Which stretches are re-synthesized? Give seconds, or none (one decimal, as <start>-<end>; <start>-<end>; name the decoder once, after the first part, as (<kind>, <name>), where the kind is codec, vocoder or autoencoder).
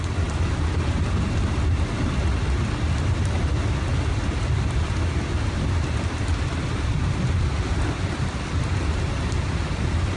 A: none